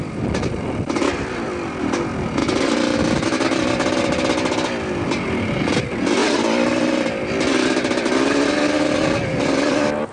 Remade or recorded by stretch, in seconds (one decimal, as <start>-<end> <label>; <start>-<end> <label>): 0.0-10.1 recorded